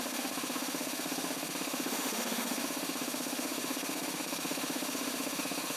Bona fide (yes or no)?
no